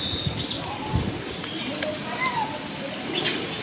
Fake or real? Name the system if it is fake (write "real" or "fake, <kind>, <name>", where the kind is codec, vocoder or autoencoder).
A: real